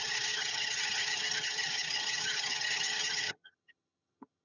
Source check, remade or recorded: remade